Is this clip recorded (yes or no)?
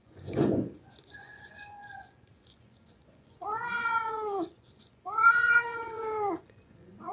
no